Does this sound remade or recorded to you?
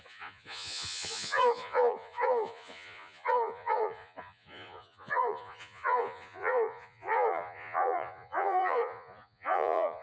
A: remade